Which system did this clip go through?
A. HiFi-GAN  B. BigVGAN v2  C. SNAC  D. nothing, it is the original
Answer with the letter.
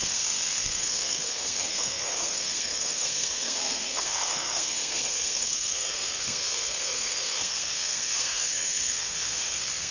C